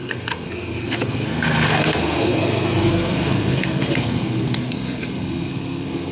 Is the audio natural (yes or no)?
no